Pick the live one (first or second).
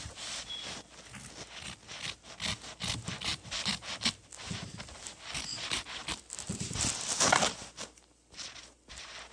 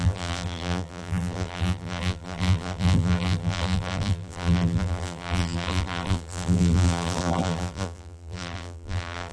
first